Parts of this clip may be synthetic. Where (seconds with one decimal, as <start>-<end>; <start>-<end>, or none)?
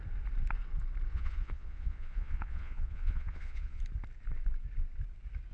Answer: 1.1-3.8